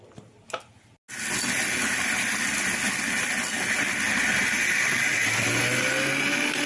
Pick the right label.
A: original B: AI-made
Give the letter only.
A